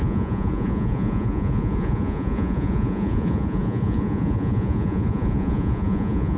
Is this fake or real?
fake